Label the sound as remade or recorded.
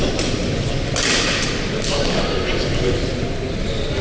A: recorded